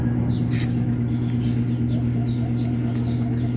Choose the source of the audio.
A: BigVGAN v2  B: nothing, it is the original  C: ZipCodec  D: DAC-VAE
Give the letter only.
B